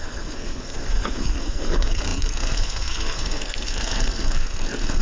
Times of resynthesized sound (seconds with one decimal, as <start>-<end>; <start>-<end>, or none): 0.0-5.0